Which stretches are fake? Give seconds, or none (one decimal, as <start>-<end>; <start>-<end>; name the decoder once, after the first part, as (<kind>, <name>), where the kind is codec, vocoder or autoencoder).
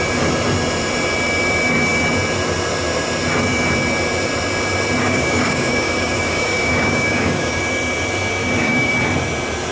5.0-7.6 (codec, DAC); 8.4-8.9